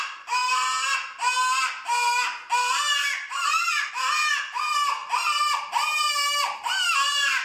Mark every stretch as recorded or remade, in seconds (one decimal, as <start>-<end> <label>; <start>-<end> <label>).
0.0-7.4 recorded